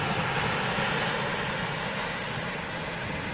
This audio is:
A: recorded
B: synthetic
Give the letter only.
A